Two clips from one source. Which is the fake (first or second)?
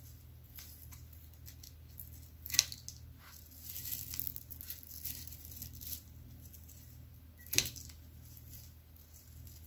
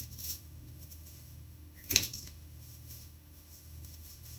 second